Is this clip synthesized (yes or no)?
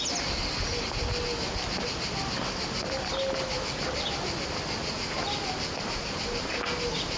no